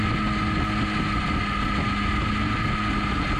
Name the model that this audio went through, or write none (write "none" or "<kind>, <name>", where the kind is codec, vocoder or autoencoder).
none